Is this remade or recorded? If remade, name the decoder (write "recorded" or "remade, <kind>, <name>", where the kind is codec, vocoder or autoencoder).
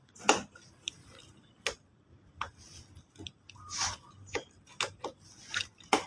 recorded